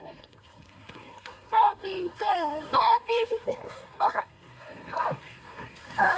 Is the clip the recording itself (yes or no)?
no